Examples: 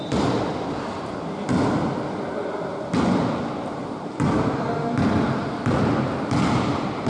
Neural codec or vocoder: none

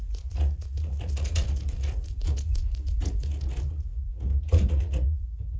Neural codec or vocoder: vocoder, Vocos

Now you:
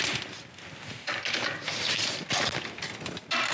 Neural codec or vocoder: none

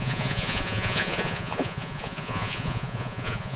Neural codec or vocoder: vocoder, Vocos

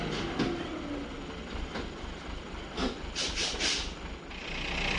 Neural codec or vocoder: none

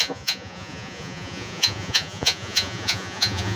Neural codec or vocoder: vocoder, Vocos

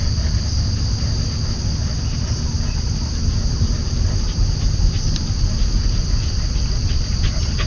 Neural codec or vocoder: none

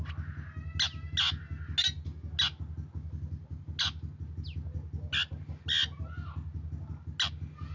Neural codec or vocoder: none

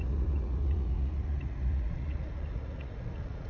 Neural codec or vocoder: vocoder, Vocos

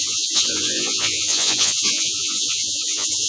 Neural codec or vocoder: vocoder, Vocos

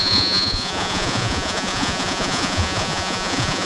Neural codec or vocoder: vocoder, Vocos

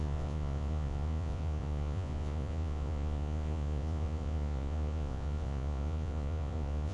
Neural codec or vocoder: vocoder, Vocos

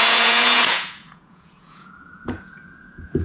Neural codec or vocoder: vocoder, Vocos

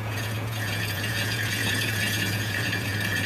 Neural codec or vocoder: vocoder, Vocos